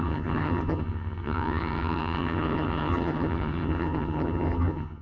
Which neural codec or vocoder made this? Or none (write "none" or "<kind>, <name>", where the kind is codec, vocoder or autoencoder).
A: vocoder, HiFi-GAN